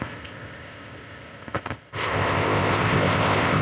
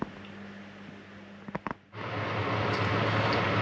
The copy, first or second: first